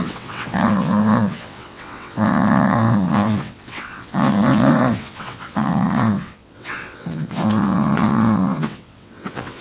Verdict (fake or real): fake